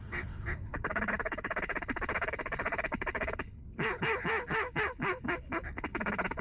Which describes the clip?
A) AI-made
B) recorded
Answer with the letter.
A